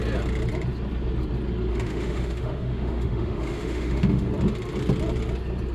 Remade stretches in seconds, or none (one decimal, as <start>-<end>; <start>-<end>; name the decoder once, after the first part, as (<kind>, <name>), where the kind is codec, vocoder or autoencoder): 1.7-4.3 (autoencoder, DAC-VAE)